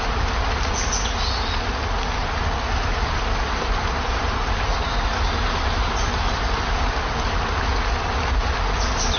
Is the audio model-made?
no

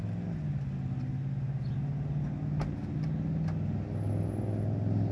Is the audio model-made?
no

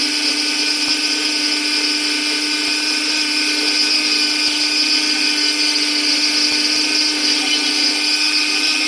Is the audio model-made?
no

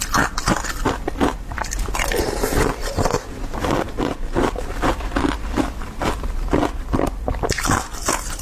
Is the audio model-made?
no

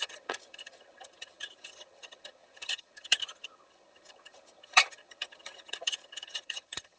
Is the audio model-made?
yes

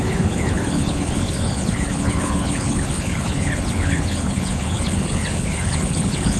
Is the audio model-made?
yes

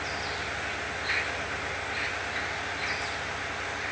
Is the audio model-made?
no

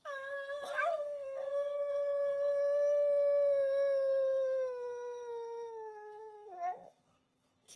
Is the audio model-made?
yes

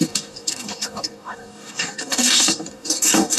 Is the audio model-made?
yes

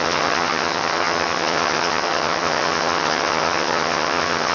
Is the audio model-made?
yes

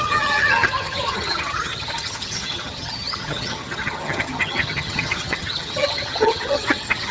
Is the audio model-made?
yes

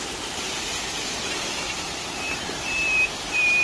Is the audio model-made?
no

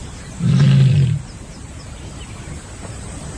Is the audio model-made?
no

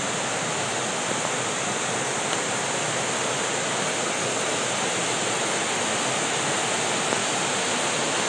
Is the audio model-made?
no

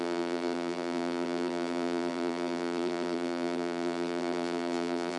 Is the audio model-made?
yes